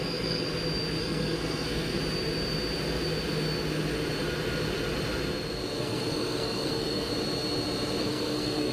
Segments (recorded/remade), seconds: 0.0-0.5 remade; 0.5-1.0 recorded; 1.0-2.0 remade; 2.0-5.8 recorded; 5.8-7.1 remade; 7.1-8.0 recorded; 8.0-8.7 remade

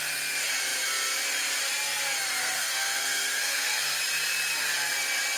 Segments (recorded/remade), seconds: 0.0-2.4 recorded; 2.4-3.8 remade; 3.8-5.4 recorded

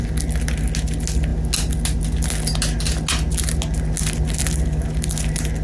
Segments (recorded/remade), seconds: 0.0-5.6 recorded

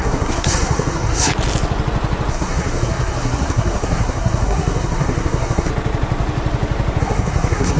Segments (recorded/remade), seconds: 0.0-1.3 remade; 1.3-2.3 recorded; 2.3-5.7 remade; 5.7-7.0 recorded; 7.0-7.8 remade

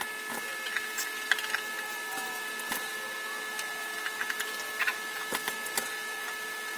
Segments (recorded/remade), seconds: 0.0-6.8 recorded

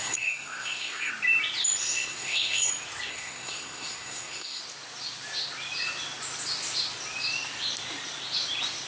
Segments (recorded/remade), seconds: 0.0-1.1 remade; 1.1-1.8 recorded; 1.8-2.7 remade; 2.7-3.1 recorded; 3.1-4.6 remade; 4.6-8.9 recorded